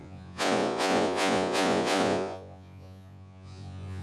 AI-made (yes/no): yes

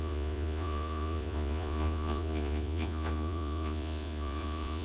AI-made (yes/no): yes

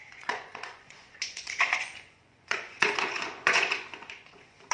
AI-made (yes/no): yes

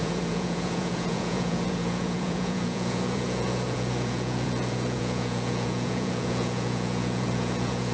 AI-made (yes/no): yes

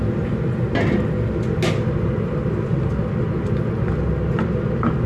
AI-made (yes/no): no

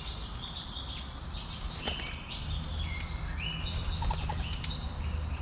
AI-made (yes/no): no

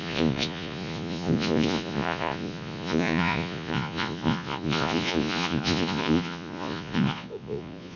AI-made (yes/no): yes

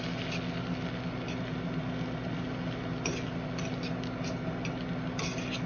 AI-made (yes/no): no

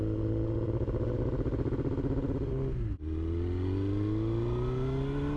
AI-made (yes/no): no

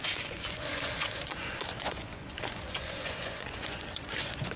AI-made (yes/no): yes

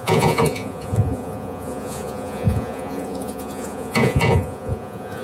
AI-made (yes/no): yes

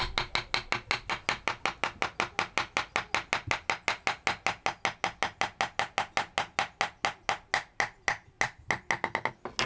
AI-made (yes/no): no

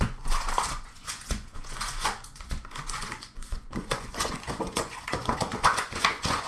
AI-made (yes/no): yes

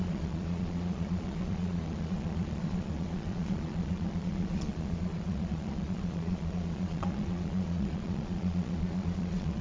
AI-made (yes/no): yes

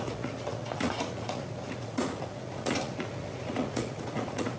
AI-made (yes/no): yes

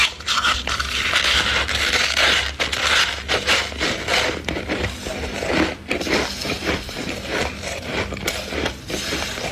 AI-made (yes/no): no